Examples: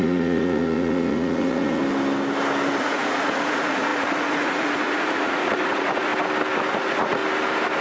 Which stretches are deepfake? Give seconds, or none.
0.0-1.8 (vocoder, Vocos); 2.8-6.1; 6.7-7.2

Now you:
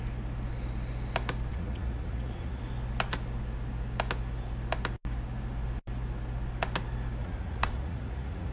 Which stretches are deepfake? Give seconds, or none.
1.5-2.6 (vocoder, Vocos); 7.2-8.5

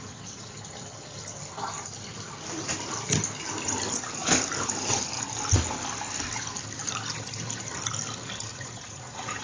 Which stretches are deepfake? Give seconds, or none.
8.5-9.4 (vocoder, Vocos)

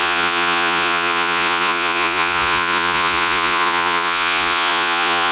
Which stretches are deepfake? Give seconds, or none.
0.0-5.3 (vocoder, Vocos)

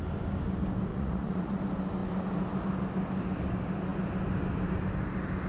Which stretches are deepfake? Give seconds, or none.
0.9-1.6 (vocoder, Vocos)